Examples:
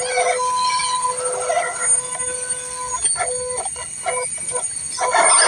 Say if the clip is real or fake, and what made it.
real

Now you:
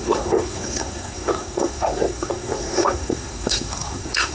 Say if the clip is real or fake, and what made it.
fake, codec, SNAC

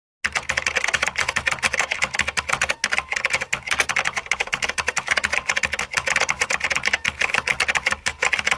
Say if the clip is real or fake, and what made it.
real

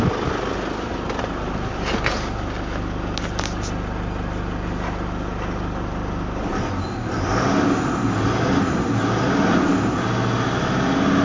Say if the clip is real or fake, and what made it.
real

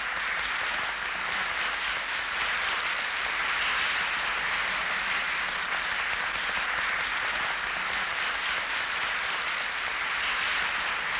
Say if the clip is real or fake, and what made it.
real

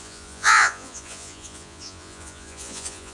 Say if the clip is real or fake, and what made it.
fake, vocoder, Vocos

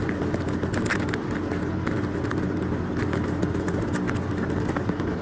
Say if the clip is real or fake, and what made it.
real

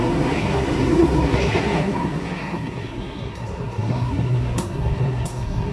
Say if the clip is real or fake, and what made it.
fake, codec, SNAC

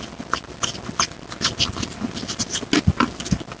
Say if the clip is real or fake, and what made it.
real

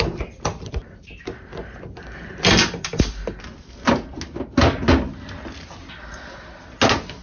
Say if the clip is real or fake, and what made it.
real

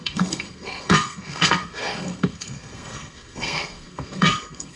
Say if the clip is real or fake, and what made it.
fake, codec, SNAC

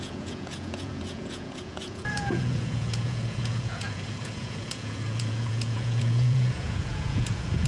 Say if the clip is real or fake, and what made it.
fake, vocoder, Vocos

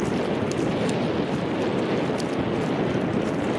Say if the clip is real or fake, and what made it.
real